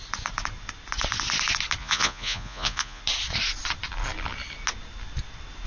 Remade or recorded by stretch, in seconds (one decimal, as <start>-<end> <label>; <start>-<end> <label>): 0.0-1.8 recorded; 1.8-3.0 remade; 3.0-5.7 recorded